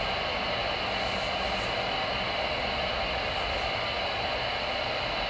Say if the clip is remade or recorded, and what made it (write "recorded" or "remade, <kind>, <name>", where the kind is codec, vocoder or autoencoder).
recorded